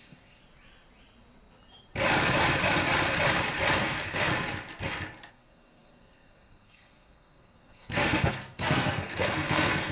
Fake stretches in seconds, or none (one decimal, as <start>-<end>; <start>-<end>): 0.0-0.4; 3.8-4.3; 5.3-9.9